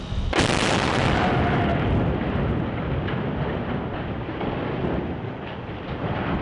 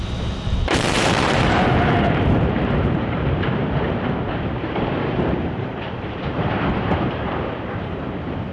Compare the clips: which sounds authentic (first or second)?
first